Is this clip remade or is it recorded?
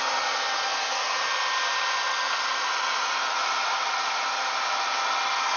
recorded